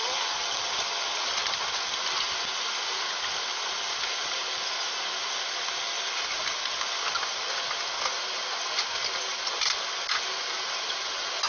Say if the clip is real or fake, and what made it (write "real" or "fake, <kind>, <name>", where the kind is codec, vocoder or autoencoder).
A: real